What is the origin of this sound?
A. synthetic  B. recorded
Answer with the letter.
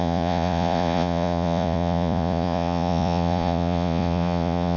A